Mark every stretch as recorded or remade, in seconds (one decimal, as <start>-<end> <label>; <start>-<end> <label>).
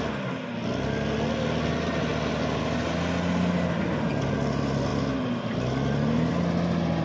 0.0-7.0 recorded